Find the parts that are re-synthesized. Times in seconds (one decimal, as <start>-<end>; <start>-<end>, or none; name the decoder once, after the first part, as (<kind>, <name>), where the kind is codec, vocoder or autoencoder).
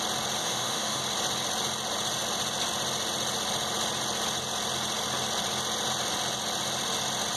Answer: 0.4-1.0 (autoencoder, DAC-VAE)